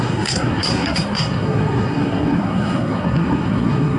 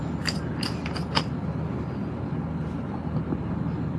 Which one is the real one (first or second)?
second